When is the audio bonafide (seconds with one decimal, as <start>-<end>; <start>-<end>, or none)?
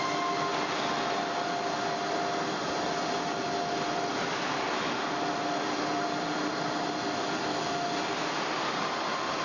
0.0-9.4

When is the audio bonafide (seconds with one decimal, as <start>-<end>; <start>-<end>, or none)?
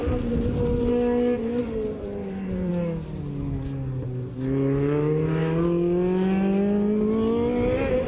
0.9-1.6; 2.7-8.1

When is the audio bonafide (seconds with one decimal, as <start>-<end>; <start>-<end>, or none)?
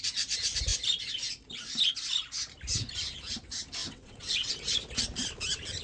0.0-3.8; 4.5-5.8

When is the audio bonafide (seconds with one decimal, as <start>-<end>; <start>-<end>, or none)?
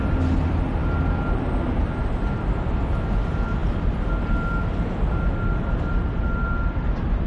0.0-7.3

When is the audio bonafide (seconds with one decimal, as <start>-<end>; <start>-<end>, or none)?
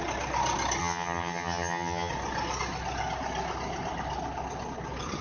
0.0-0.8; 2.1-5.2